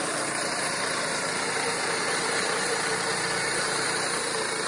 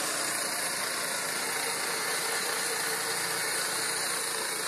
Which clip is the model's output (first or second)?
first